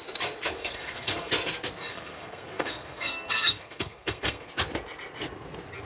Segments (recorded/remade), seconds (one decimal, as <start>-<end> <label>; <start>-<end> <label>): 0.0-0.6 recorded; 0.6-1.3 remade; 1.3-1.9 recorded; 1.9-4.5 remade; 4.5-5.9 recorded